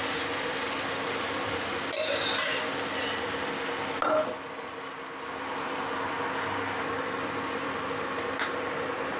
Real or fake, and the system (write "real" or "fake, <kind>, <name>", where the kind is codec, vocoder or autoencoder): real